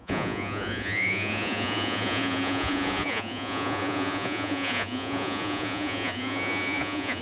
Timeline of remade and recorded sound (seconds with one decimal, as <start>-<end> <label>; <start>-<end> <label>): 0.0-7.2 remade